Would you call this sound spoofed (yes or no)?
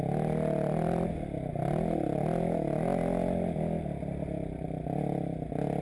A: no